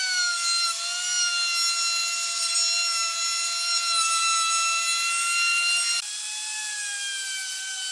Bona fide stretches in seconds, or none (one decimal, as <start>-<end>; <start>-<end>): 0.0-7.9